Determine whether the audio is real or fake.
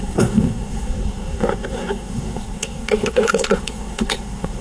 fake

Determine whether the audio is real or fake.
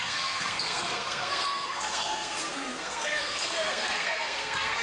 fake